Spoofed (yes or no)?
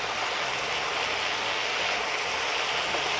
no